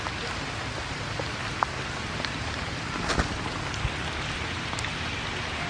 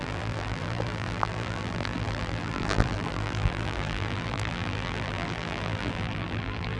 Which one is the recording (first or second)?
first